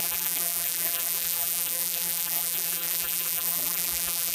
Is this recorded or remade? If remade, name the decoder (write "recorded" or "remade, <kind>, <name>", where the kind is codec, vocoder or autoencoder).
remade, vocoder, BigVGAN v2